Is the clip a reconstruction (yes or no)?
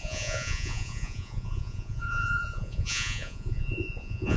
yes